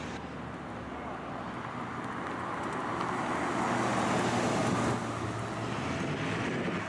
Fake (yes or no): no